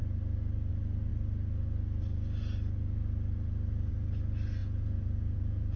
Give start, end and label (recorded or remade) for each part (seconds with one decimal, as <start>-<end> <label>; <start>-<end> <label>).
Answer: 0.0-4.6 recorded; 4.6-5.8 remade